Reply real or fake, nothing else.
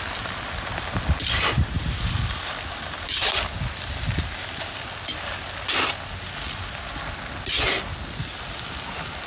real